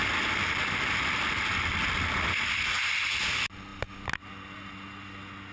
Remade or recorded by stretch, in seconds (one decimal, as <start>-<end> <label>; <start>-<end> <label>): 0.0-5.5 recorded

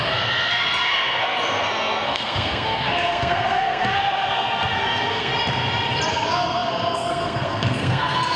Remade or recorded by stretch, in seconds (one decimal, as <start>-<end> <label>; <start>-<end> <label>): 0.0-5.3 remade; 5.3-6.1 recorded; 6.1-8.4 remade

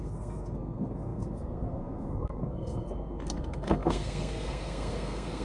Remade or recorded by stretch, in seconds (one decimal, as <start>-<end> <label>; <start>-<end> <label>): 0.0-5.4 remade

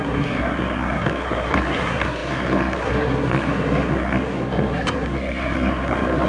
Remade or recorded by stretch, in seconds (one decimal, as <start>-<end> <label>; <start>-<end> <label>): 0.0-6.3 remade

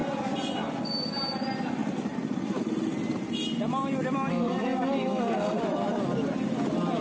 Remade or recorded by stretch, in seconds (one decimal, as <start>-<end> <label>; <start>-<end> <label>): 0.0-4.3 recorded; 4.3-5.6 remade; 5.6-7.0 recorded

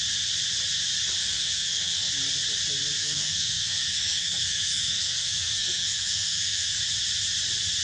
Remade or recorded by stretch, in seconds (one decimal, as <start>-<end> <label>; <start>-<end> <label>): 0.0-1.2 recorded; 1.2-2.1 remade; 2.1-3.0 recorded; 3.0-6.8 remade; 6.8-7.8 recorded